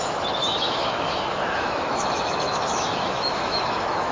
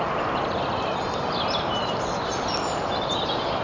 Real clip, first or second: second